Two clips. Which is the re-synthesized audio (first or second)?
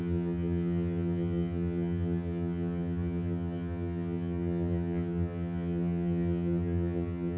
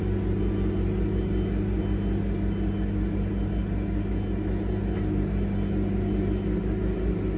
first